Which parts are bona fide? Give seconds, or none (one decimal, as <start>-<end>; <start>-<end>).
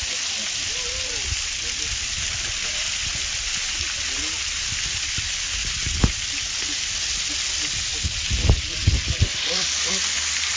0.0-5.6; 8.0-9.3; 9.9-10.6